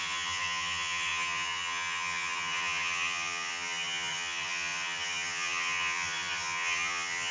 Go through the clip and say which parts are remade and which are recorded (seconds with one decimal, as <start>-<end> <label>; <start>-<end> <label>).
0.0-7.3 remade